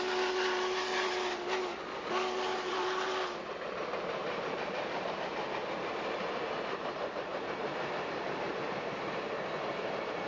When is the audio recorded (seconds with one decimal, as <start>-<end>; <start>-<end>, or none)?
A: 0.0-2.5; 3.1-4.2; 5.2-7.3; 8.5-10.3